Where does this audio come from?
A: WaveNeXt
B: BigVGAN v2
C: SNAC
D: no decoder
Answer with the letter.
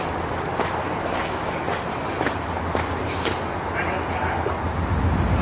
D